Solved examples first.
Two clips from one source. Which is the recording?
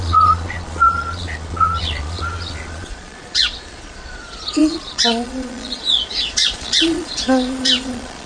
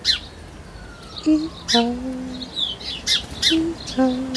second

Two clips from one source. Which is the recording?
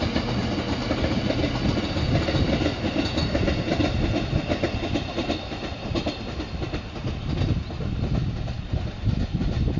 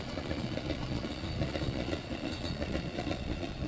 first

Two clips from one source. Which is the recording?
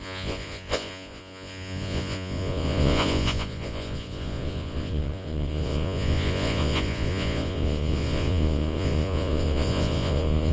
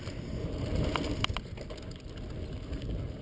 second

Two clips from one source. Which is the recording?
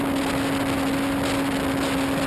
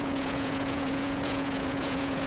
first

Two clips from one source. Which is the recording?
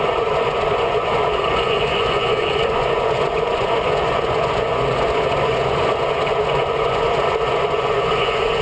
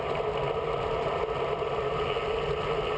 second